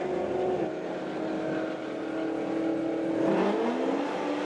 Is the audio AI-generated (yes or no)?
no